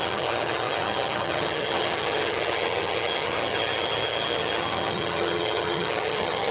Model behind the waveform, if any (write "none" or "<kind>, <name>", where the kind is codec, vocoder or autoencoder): vocoder, HiFi-GAN